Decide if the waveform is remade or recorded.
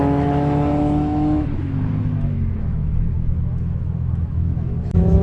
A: remade